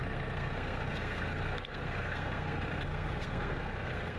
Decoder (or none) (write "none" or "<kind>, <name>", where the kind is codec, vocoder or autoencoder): codec, SNAC